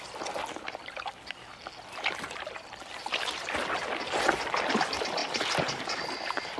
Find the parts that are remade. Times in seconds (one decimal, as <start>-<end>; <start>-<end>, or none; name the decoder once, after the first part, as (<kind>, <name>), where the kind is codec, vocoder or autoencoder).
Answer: none